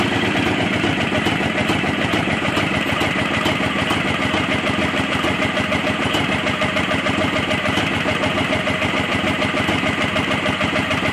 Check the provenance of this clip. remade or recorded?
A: recorded